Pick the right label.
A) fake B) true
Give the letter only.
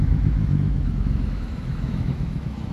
A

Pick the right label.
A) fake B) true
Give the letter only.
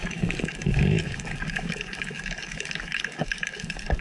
A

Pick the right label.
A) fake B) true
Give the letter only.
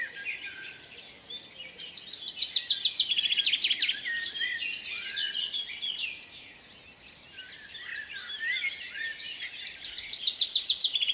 B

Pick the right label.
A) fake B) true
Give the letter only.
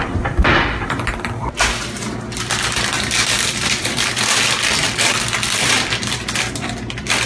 A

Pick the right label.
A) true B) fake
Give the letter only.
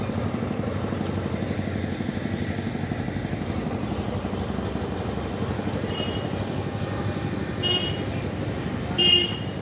A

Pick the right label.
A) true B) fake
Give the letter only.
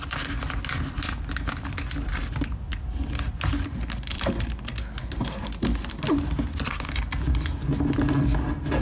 A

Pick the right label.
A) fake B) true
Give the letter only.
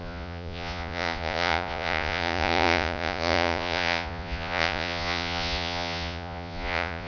A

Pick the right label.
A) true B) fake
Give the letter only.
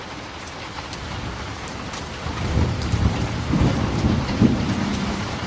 B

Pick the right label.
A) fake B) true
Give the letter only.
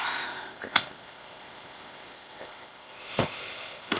A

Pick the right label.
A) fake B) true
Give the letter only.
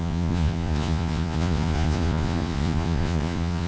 A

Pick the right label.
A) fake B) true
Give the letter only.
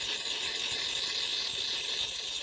B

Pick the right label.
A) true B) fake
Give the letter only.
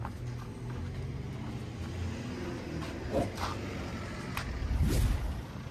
A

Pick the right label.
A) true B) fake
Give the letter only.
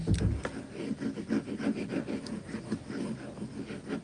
A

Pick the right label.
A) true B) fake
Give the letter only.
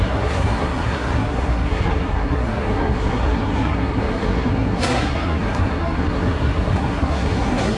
B